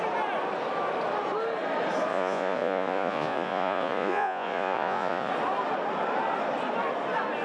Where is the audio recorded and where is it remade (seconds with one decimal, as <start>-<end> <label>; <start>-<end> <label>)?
0.0-2.1 recorded; 2.1-5.3 remade; 5.3-7.4 recorded